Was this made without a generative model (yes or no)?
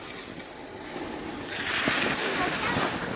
yes